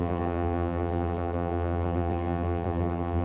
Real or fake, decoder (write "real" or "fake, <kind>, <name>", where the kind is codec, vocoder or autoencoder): fake, vocoder, BigVGAN v2